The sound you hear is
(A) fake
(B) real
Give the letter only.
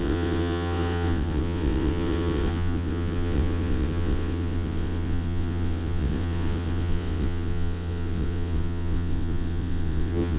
A